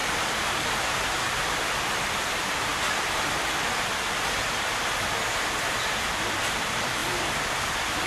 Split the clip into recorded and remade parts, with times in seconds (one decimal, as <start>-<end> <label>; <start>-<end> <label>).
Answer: 0.0-2.7 remade; 2.7-6.4 recorded; 6.4-8.1 remade